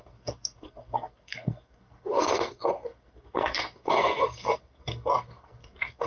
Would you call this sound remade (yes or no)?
yes